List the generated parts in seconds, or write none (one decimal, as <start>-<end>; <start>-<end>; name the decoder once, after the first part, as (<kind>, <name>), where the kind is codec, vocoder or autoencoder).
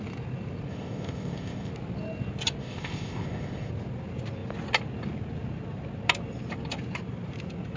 0.7-1.7 (codec, ZipCodec); 2.6-3.7